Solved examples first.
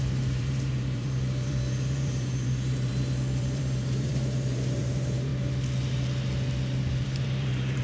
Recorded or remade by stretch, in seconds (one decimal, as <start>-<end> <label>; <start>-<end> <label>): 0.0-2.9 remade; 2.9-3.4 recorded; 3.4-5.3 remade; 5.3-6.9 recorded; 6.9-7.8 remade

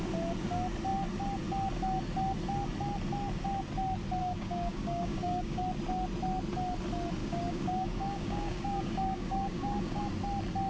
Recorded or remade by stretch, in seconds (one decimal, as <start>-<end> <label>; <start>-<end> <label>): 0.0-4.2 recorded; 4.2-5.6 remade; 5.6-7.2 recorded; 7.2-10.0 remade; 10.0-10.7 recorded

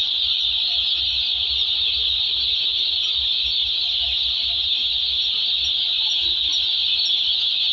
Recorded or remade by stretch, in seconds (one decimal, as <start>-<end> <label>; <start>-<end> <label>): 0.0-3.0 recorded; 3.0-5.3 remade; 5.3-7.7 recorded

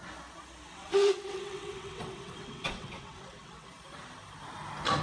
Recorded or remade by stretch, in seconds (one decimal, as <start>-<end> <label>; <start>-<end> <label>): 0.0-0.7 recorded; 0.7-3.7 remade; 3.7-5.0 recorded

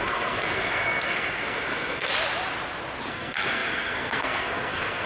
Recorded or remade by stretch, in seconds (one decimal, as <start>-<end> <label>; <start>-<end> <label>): 0.0-2.1 remade; 2.1-3.1 recorded; 3.1-5.1 remade